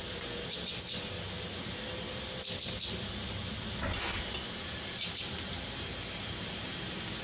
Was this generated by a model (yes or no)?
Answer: no